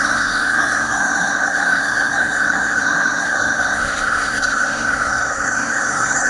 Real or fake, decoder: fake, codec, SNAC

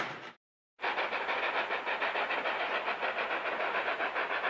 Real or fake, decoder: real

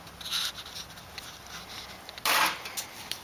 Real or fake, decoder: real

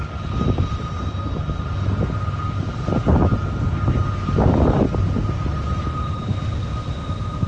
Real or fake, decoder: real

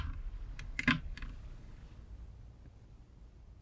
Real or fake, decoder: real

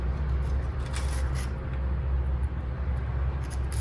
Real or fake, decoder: real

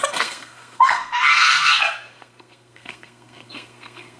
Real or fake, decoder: fake, codec, SNAC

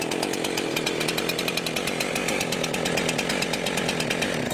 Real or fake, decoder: real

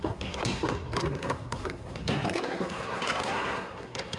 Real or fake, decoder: fake, codec, SNAC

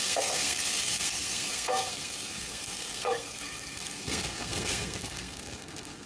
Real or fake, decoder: fake, codec, SNAC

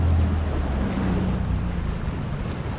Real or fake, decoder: real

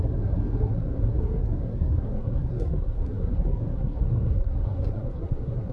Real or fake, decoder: fake, codec, SNAC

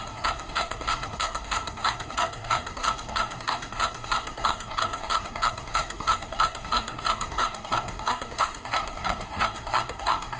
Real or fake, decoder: fake, codec, SNAC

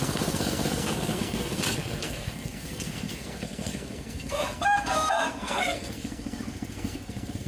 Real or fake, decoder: fake, codec, SNAC